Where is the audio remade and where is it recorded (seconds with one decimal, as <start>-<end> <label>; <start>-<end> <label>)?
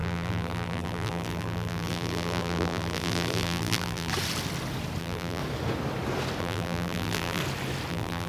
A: 0.0-4.1 remade; 4.1-5.0 recorded; 5.0-5.4 remade; 5.4-6.4 recorded; 6.4-7.4 remade; 7.4-7.9 recorded; 7.9-8.3 remade